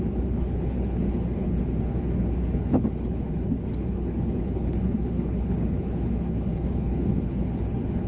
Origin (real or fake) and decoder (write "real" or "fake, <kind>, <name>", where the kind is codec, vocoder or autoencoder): fake, codec, HILCodec